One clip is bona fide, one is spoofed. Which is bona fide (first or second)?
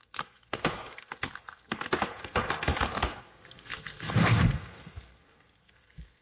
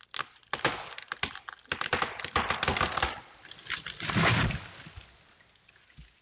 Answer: second